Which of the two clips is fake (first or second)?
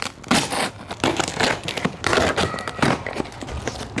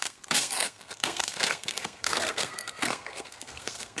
second